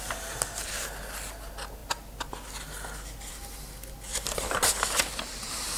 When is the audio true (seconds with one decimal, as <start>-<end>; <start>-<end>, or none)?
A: 0.0-4.1